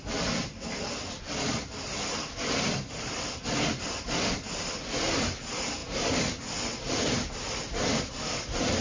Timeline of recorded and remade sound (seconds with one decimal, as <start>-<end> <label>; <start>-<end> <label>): 0.0-8.8 recorded